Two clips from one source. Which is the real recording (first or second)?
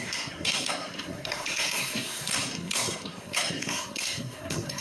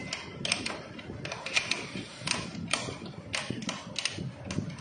second